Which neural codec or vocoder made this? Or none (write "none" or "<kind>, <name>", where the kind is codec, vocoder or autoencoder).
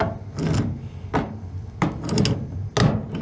none